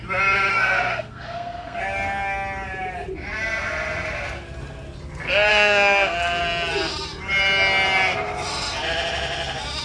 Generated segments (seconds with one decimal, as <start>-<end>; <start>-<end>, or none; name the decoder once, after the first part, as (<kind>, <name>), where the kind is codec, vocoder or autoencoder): 0.5-1.8 (codec, SNAC); 5.5-6.4